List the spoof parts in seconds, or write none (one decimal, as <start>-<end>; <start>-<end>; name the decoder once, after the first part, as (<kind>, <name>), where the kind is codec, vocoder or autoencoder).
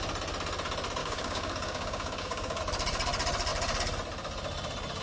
1.0-2.6 (codec, DAC)